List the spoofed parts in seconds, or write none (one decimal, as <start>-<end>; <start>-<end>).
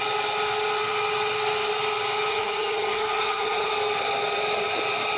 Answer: 2.3-3.7